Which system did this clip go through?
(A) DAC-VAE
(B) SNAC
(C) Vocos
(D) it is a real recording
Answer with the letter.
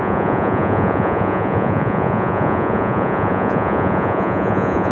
C